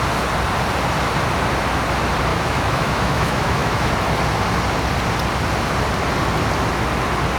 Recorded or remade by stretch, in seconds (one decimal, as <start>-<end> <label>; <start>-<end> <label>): 0.0-2.3 recorded; 2.3-3.9 remade; 3.9-7.4 recorded